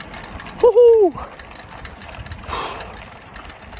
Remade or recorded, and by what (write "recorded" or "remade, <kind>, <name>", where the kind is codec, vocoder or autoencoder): recorded